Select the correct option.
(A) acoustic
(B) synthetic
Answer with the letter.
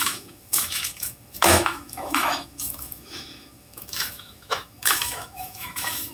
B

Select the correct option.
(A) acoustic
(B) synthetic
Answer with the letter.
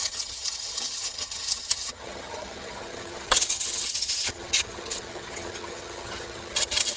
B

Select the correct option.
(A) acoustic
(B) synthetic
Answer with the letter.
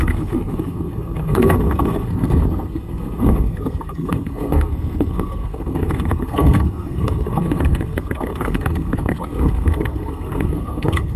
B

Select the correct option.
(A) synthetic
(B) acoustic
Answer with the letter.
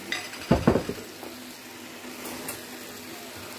B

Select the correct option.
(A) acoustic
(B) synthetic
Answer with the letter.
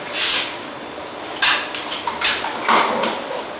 A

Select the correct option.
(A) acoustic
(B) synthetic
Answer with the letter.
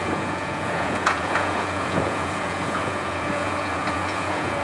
B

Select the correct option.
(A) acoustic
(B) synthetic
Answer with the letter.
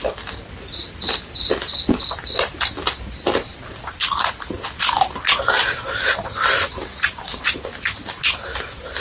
A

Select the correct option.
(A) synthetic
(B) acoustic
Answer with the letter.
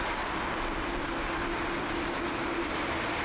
B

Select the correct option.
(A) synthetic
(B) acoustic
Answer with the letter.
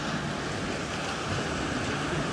B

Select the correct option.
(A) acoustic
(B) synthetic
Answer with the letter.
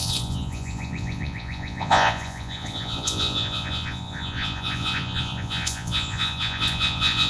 B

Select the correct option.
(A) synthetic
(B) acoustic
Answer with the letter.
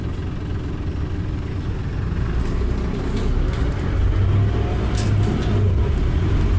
B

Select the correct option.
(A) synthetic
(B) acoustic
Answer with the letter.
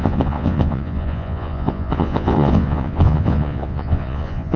A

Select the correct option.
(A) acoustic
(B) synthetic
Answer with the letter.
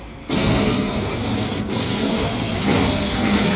B